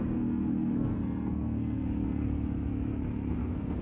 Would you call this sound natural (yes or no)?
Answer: no